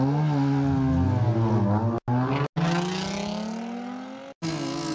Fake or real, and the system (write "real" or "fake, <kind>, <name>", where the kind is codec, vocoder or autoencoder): real